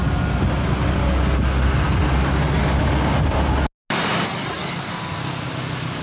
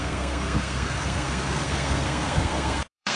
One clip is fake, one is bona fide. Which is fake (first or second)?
second